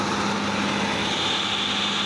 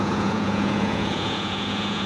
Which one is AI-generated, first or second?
second